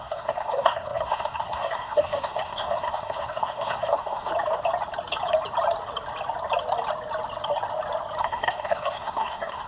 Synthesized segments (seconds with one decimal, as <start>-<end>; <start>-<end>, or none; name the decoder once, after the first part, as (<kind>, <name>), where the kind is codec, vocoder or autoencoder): 0.0-4.3 (codec, SNAC); 8.2-9.7